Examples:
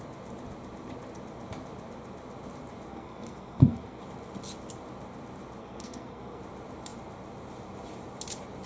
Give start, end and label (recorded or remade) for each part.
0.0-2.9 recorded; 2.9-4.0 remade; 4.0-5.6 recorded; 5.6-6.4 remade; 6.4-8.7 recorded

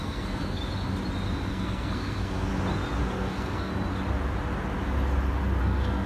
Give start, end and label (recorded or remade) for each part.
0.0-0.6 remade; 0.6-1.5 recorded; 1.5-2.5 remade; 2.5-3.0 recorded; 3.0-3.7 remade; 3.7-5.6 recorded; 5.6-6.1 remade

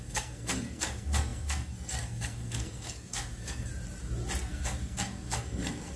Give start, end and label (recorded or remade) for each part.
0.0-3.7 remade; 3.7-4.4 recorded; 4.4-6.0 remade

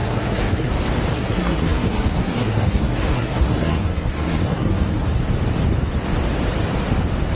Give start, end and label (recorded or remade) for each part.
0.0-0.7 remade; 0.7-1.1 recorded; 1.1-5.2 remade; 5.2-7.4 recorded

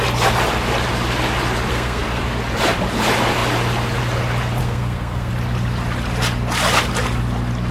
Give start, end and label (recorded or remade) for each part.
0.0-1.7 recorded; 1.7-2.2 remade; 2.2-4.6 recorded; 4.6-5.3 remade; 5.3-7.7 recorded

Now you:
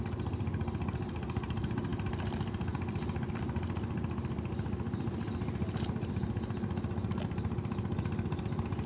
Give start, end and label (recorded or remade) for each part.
0.0-8.9 recorded